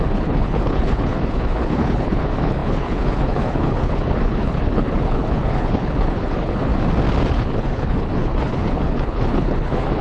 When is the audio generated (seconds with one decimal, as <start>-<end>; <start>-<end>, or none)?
0.0-6.7; 7.3-10.0